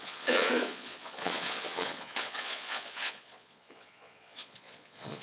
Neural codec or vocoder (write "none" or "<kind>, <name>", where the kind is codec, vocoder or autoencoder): vocoder, Vocos